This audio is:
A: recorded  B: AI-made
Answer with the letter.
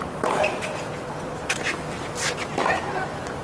A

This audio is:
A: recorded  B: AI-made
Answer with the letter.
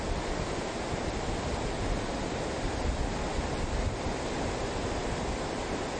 A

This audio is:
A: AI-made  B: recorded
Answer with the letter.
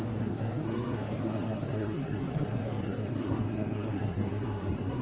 A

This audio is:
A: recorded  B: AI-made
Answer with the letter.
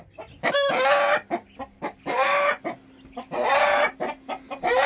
A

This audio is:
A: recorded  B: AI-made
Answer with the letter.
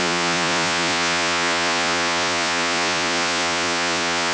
B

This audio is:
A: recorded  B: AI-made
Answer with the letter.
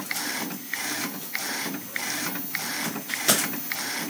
A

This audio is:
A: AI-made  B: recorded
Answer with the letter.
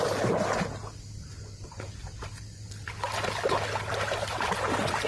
B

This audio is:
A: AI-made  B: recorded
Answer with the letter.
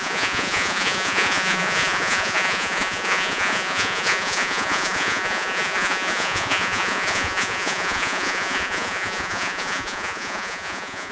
A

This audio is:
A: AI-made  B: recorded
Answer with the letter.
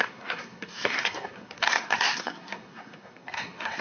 A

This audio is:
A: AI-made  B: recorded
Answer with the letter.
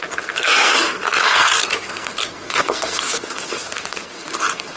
A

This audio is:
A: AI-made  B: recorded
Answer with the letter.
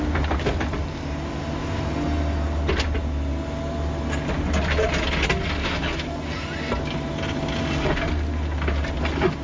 B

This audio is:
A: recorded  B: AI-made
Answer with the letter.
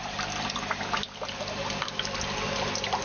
A